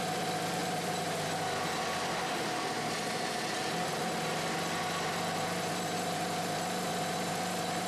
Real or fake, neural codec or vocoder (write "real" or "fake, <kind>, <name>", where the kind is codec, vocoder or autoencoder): real